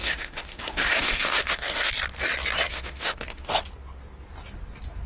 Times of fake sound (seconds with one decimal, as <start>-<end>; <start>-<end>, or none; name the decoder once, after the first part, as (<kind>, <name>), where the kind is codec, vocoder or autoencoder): 0.0-1.9 (autoencoder, DAC-VAE); 2.7-3.6